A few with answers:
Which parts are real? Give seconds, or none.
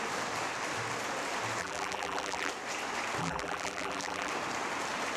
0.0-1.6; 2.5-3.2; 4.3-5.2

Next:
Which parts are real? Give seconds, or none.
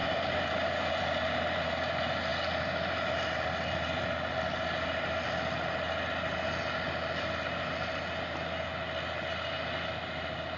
0.0-10.6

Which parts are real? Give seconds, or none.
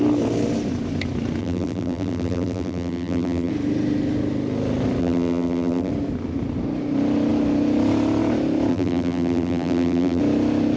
0.0-1.4; 3.5-5.0; 5.9-8.7; 10.2-10.8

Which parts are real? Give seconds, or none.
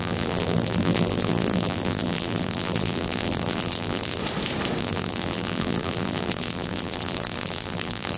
4.2-4.8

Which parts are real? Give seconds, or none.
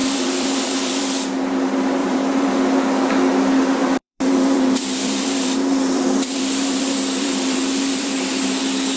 1.2-2.0; 2.6-3.8; 8.6-9.0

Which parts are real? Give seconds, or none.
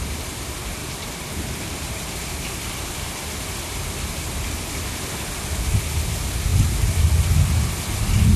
0.0-0.8; 5.6-8.4